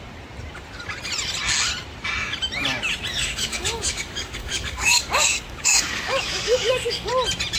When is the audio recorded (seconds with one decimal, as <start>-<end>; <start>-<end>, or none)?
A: 0.0-3.1; 7.1-7.6